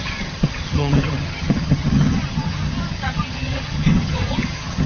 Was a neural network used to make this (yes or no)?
yes